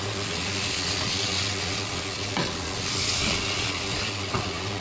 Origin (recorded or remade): remade